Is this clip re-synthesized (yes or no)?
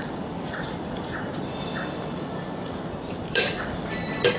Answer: yes